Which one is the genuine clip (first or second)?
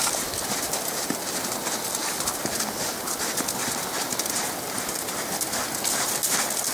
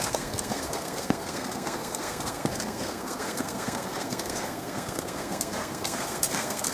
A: first